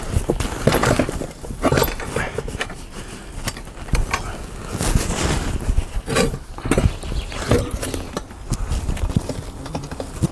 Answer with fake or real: real